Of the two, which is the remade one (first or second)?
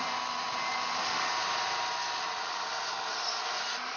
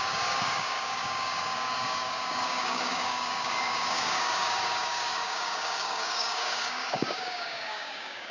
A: second